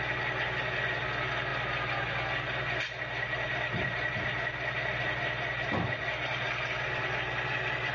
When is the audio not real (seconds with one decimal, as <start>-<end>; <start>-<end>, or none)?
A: none